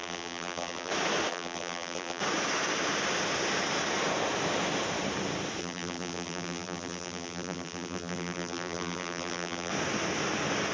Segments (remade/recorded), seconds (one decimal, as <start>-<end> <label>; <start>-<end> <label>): 0.0-0.9 remade; 0.9-1.3 recorded; 1.3-2.2 remade; 2.2-5.6 recorded; 5.6-9.7 remade; 9.7-10.7 recorded

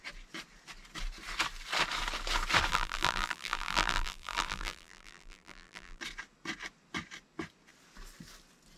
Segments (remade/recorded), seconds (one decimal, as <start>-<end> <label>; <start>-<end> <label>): 0.0-2.7 recorded; 2.7-6.0 remade; 6.0-8.8 recorded

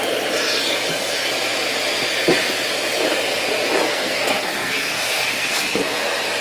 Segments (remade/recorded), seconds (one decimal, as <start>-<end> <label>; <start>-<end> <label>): 0.0-3.9 recorded; 3.9-6.0 remade; 6.0-6.4 recorded